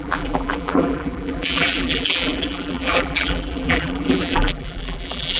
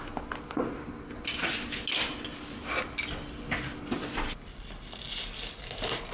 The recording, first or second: second